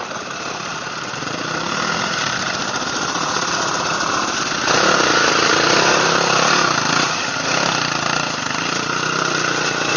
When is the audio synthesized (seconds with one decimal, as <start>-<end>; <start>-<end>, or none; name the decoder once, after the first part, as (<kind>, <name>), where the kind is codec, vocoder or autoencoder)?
none